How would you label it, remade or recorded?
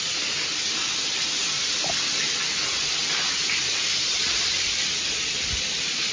recorded